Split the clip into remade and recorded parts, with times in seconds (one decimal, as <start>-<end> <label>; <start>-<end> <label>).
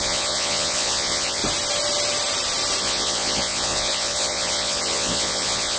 0.0-1.4 remade; 1.4-2.8 recorded; 2.8-5.8 remade